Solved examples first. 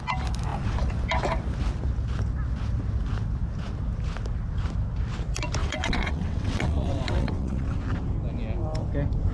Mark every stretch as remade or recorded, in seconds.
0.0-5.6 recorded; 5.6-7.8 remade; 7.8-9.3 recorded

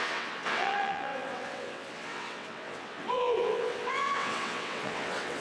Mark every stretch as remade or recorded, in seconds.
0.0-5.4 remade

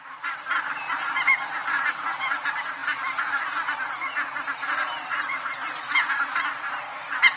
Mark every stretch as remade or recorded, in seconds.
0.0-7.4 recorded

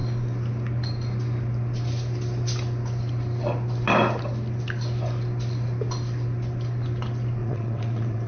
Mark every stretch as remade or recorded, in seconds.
0.0-7.4 recorded; 7.4-8.3 remade

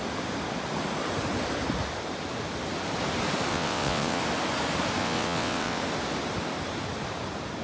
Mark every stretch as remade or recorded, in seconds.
0.0-3.5 recorded; 3.5-4.2 remade; 4.2-5.0 recorded; 5.0-5.8 remade; 5.8-7.6 recorded

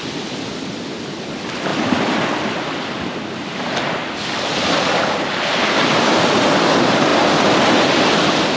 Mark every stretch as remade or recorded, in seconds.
0.0-8.6 recorded

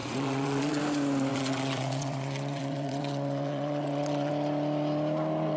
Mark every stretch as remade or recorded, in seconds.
0.0-0.8 remade; 0.8-1.3 recorded; 1.3-4.3 remade; 4.3-5.6 recorded

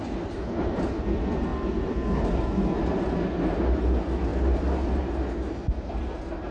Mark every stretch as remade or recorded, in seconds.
0.0-6.5 recorded